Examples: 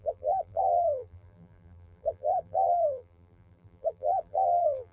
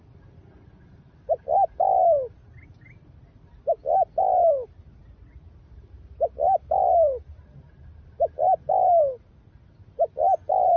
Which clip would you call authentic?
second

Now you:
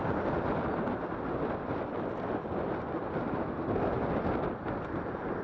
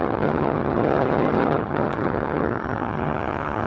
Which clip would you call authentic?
first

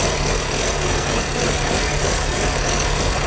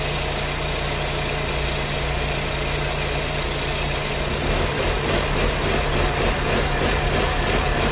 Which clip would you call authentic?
second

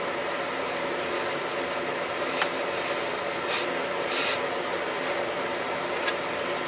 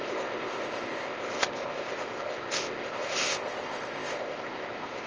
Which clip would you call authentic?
first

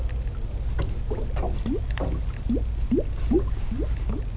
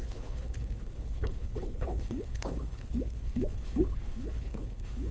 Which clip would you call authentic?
first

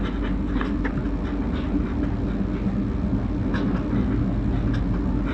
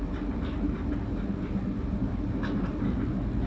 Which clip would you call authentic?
first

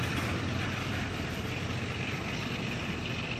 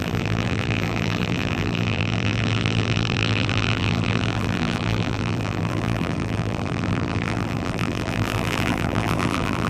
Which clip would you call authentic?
first